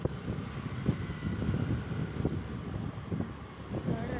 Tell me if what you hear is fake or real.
real